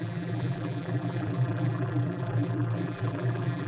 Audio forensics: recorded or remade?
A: remade